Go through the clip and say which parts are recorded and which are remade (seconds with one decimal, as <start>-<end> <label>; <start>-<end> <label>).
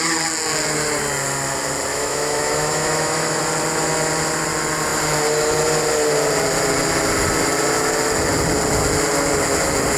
0.0-1.9 recorded; 1.9-3.4 remade; 3.4-10.0 recorded